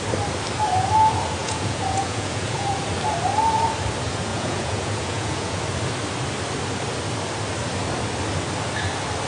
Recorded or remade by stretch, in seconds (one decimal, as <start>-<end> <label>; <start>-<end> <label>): 0.0-1.4 recorded; 1.4-2.8 remade; 2.8-4.3 recorded; 4.3-5.6 remade; 5.6-9.3 recorded